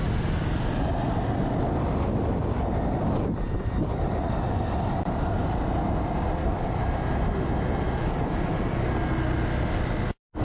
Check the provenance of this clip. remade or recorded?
recorded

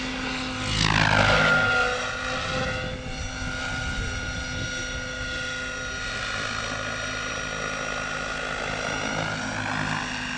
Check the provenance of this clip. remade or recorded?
recorded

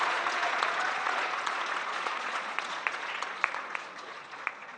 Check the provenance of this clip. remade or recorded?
remade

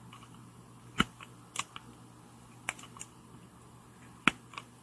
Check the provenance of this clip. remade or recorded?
recorded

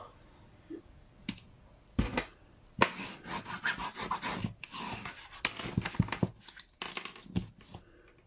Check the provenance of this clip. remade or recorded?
recorded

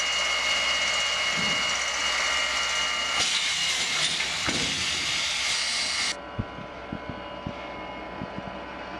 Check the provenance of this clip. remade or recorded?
recorded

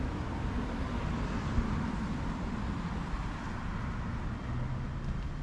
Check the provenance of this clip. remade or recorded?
recorded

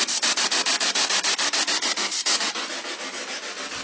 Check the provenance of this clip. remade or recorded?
recorded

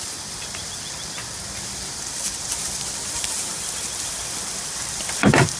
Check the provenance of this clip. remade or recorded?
remade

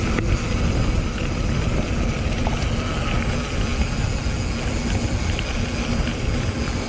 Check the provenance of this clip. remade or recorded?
recorded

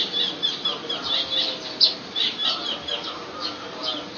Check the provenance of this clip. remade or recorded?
recorded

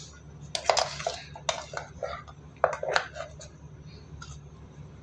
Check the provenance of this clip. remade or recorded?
recorded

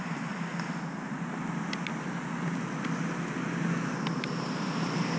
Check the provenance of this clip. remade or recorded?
recorded